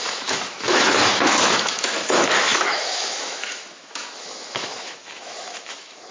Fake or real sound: fake